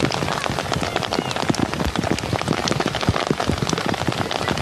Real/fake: real